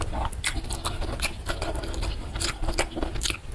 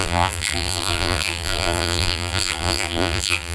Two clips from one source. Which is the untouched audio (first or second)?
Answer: first